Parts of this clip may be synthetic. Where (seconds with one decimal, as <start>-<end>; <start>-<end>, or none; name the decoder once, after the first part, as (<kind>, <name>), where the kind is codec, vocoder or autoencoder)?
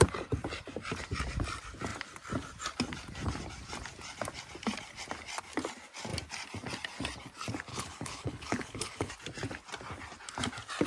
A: 7.7-9.1 (codec, HILCodec)